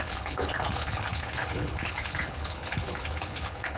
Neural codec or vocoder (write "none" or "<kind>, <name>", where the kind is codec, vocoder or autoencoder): codec, HILCodec